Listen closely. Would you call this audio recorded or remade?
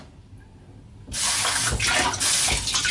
recorded